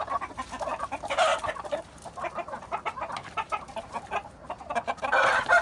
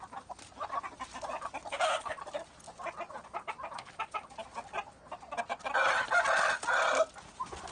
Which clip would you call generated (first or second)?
first